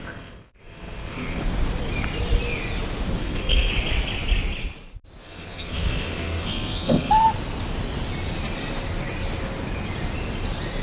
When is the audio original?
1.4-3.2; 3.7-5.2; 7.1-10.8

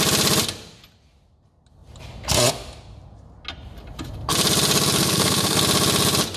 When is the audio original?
0.0-5.0; 5.6-6.4

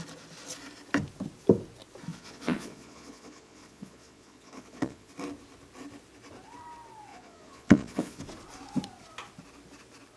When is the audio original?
0.0-2.1; 5.1-7.1; 8.2-10.2